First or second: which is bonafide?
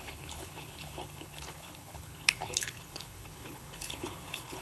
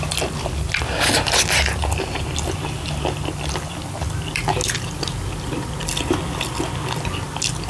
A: second